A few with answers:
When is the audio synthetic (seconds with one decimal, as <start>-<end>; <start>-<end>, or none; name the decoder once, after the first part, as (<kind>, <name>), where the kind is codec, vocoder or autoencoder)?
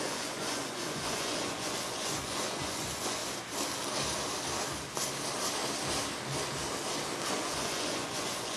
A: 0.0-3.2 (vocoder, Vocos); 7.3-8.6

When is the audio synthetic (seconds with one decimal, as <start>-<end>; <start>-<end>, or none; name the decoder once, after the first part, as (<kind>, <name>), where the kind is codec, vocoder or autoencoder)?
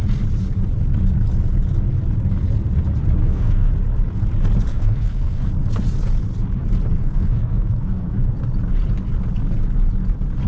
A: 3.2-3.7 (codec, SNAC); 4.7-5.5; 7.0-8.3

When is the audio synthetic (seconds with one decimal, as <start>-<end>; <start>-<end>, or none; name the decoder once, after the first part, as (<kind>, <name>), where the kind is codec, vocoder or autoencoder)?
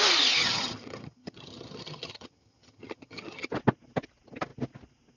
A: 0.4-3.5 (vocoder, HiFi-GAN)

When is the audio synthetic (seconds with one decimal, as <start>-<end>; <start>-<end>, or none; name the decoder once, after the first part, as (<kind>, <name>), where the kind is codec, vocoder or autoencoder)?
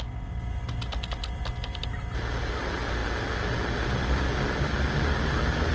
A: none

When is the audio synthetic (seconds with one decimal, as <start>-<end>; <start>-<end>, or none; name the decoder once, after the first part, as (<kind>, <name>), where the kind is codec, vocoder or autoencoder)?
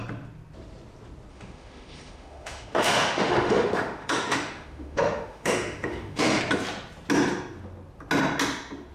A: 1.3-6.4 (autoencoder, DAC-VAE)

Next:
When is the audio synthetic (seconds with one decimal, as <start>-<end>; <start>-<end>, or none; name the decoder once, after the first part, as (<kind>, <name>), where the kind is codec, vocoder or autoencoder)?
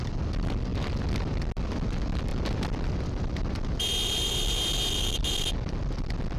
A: 2.3-5.5 (vocoder, BigVGAN v2)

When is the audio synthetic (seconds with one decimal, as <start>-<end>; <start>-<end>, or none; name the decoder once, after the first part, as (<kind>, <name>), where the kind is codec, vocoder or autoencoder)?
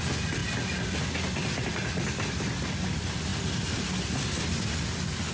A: none